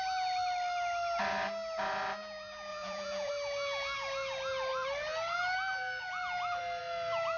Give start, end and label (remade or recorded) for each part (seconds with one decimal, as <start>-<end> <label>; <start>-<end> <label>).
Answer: 0.0-2.7 recorded; 2.7-3.3 remade; 3.3-7.4 recorded